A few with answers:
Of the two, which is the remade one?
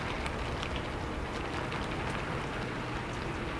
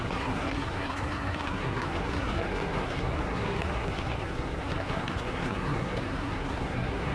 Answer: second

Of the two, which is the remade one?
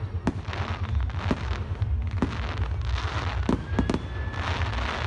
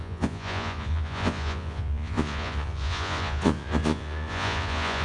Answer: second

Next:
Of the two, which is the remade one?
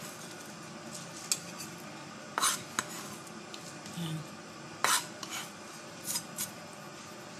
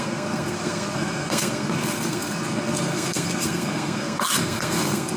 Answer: second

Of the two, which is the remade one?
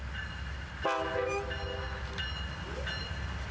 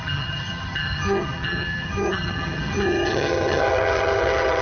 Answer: second